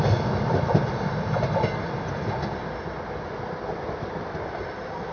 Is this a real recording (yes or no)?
yes